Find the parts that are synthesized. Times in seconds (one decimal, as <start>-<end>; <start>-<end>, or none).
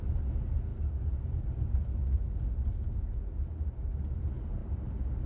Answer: 2.7-3.4